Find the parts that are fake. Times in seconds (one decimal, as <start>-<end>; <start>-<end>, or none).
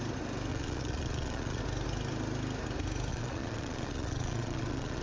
0.5-1.6; 3.1-5.0